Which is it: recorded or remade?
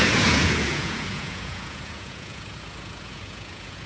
remade